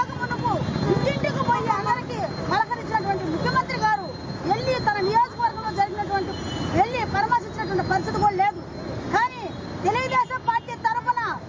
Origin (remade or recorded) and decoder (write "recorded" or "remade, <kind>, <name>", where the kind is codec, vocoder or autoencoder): recorded